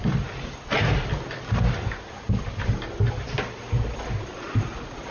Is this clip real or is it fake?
real